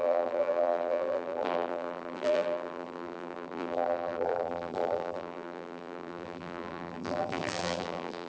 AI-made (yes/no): yes